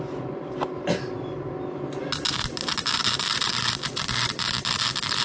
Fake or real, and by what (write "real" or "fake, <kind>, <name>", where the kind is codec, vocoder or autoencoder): real